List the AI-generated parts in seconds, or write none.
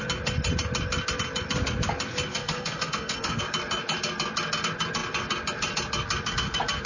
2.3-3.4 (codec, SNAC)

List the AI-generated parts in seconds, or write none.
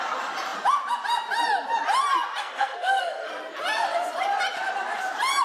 2.4-3.3 (codec, SNAC)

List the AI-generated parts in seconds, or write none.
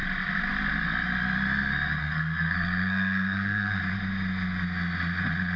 2.0-3.8 (codec, SNAC)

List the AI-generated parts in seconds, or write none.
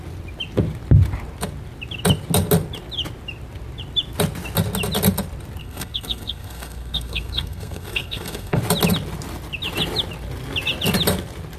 5.6-8.6 (codec, SNAC)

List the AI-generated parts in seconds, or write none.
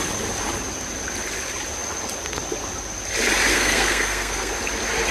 3.5-4.5 (codec, SNAC)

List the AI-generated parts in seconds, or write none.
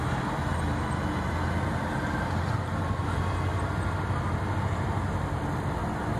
none